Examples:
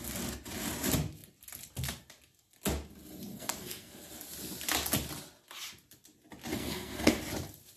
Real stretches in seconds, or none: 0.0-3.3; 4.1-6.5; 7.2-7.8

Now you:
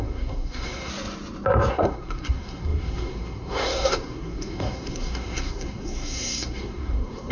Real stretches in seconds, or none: 0.9-1.7

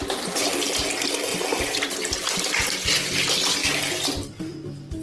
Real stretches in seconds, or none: 0.0-5.0

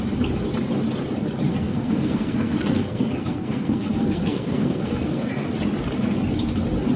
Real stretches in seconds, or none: 0.0-1.5; 5.3-7.0

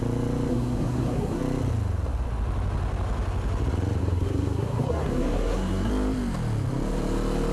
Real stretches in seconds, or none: 0.0-0.5; 1.4-4.0; 5.9-7.5

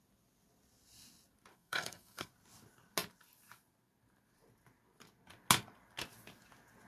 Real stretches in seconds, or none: 0.0-1.5; 2.3-6.9